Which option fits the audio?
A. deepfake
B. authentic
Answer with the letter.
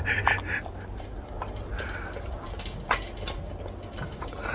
B